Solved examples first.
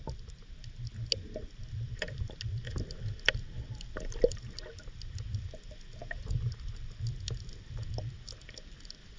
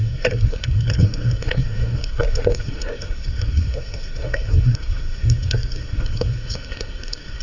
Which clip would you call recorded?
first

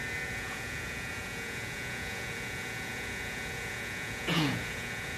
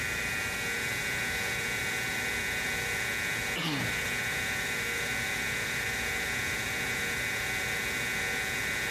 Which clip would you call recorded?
second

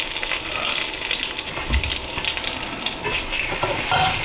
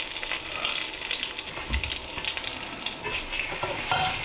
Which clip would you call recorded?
second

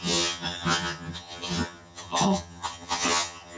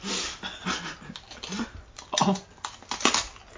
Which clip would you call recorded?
second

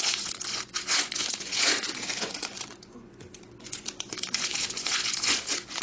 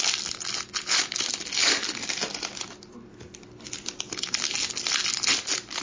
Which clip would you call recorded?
second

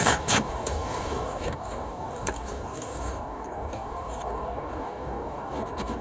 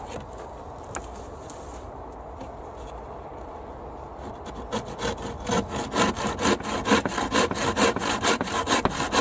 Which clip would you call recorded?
second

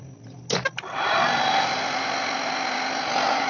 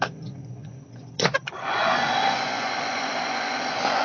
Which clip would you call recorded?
first